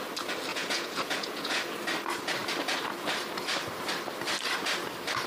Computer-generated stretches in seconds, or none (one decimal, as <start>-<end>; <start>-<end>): 0.5-1.6